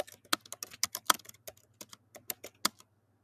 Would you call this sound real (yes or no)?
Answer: yes